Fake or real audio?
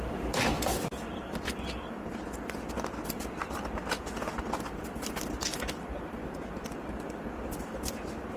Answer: real